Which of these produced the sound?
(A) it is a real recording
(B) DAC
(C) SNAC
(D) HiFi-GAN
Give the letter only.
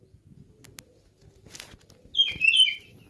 A